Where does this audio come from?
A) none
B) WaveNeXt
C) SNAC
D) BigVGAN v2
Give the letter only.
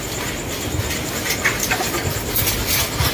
A